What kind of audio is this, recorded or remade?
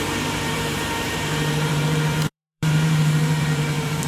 remade